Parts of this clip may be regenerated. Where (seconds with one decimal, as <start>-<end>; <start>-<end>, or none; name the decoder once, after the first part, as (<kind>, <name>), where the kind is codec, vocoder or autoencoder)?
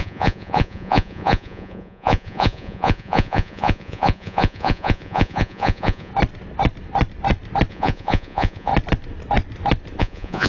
0.0-6.1 (vocoder, Vocos); 7.7-8.7; 10.0-10.5